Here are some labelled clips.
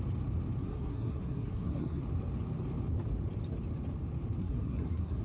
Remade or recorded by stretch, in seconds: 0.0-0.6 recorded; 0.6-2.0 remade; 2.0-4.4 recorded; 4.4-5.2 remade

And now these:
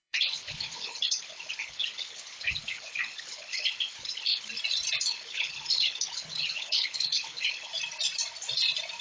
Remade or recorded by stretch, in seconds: 0.0-4.5 remade; 4.5-5.1 recorded; 5.1-7.7 remade; 7.7-9.0 recorded

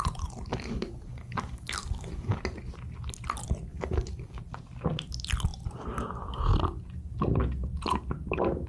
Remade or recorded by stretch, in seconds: 0.0-0.5 recorded; 0.5-2.4 remade; 2.4-3.7 recorded; 3.7-4.4 remade; 4.4-8.7 recorded

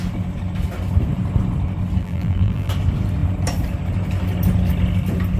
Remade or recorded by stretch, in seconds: 0.0-2.0 recorded; 2.0-2.7 remade; 2.7-5.4 recorded

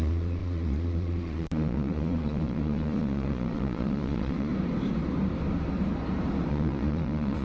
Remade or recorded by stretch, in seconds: 0.0-4.5 remade; 4.5-6.5 recorded; 6.5-7.4 remade

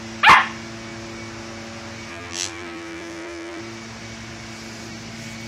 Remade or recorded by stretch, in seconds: 0.0-2.1 recorded; 2.1-3.6 remade; 3.6-5.5 recorded

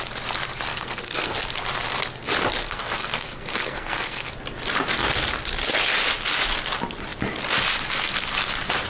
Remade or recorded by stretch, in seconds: 0.0-0.7 recorded; 0.7-1.3 remade; 1.3-2.6 recorded; 2.6-4.3 remade; 4.3-8.9 recorded